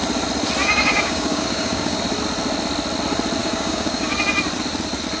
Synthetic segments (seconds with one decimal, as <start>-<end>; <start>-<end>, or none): 0.6-2.0; 3.4-4.2